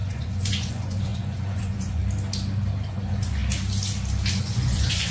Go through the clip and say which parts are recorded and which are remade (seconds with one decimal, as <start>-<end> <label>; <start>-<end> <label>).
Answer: 0.0-2.0 remade; 2.0-2.9 recorded; 2.9-3.4 remade; 3.4-4.3 recorded; 4.3-5.1 remade

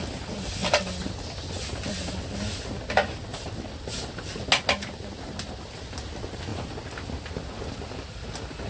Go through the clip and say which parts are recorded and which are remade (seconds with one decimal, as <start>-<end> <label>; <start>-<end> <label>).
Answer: 0.0-8.7 recorded